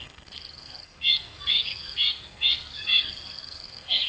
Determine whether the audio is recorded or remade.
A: remade